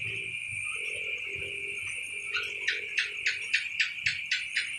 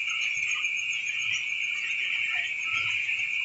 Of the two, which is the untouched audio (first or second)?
first